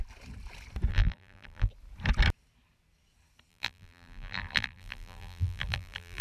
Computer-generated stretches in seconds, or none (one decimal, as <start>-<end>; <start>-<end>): 0.9-1.7; 3.5-6.2